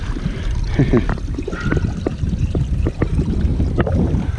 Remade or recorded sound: recorded